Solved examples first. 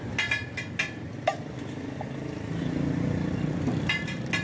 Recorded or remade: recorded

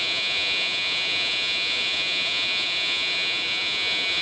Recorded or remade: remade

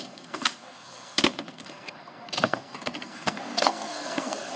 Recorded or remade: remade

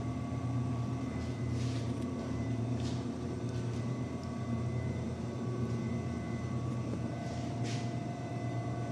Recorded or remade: remade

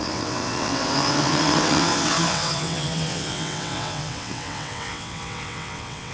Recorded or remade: remade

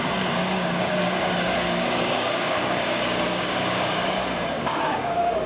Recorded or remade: remade